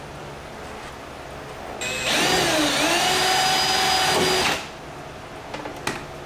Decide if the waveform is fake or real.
real